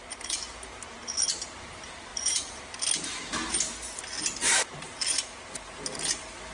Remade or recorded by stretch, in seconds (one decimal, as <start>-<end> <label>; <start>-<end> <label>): 0.0-2.1 recorded; 2.1-2.6 remade; 2.6-6.5 recorded